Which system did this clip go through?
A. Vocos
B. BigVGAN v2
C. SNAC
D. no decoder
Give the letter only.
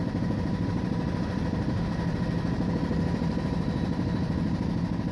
B